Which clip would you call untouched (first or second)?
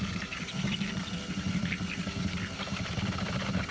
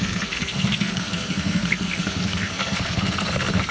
first